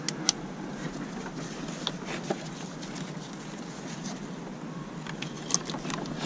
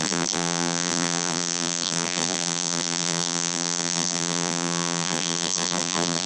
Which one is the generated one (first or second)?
second